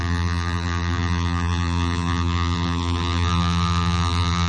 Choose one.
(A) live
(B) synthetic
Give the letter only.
B